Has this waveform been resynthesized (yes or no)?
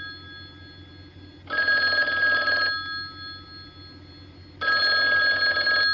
no